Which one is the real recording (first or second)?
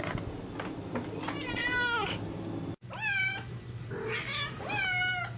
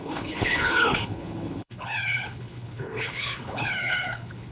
first